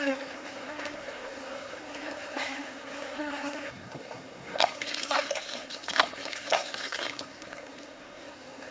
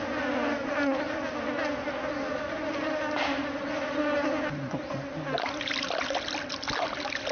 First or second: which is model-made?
first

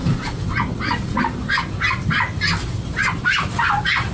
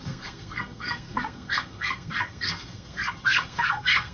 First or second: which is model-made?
second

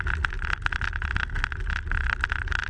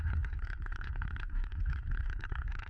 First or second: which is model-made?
second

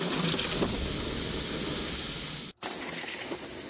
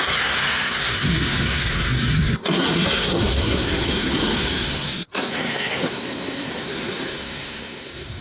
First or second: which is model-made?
second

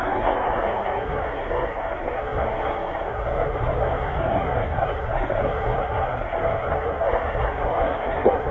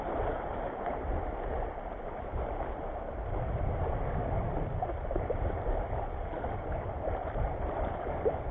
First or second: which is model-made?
first